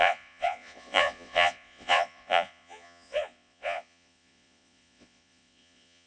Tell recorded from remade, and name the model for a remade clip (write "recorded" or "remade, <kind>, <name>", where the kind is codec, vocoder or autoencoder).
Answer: remade, vocoder, Vocos